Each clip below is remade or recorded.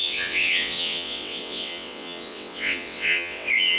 remade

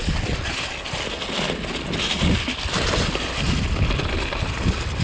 recorded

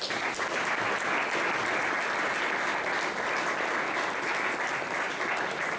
recorded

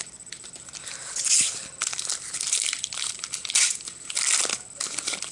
recorded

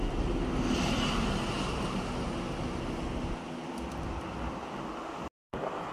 recorded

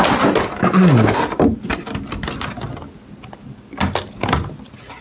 recorded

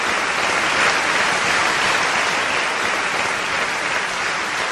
recorded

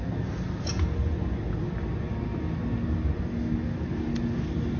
recorded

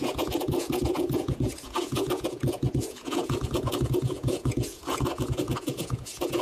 remade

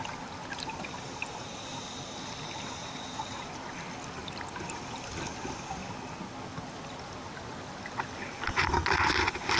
recorded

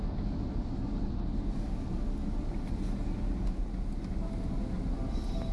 recorded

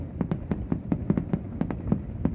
recorded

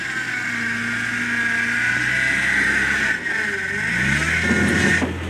recorded